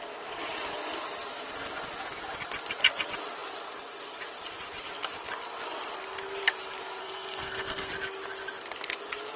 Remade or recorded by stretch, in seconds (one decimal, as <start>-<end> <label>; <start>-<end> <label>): 0.0-7.0 recorded; 7.0-7.9 remade; 7.9-9.4 recorded